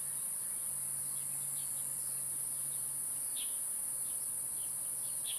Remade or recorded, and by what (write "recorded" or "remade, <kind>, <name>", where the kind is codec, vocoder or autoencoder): recorded